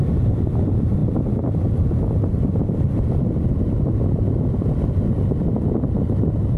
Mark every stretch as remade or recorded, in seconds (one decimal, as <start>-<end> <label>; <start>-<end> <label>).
0.0-6.6 recorded